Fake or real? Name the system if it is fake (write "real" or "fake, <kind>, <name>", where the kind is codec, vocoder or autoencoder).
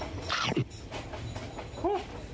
real